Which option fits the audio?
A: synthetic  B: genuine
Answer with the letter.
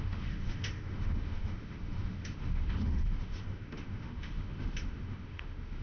A